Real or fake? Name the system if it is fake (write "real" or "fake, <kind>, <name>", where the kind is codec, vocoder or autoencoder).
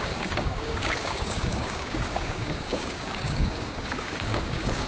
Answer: fake, codec, DAC